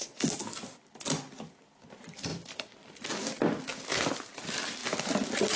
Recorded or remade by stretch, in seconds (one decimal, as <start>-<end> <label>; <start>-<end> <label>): 0.0-5.6 recorded